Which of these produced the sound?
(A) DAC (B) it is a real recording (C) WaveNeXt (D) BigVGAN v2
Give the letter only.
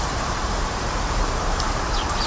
D